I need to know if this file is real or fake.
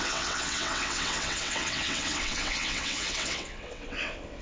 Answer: fake